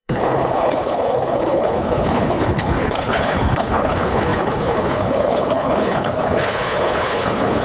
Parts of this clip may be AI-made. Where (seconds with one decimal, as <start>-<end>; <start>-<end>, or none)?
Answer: 0.0-7.6